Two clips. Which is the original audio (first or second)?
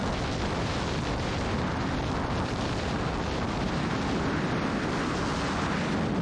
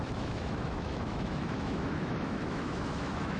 first